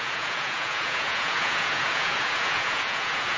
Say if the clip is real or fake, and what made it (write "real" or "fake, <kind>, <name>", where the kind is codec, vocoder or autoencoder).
fake, vocoder, Vocos